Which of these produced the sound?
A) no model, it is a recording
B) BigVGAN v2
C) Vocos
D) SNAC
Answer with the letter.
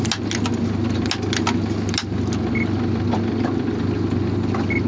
A